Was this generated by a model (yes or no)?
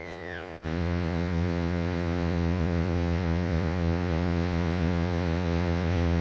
yes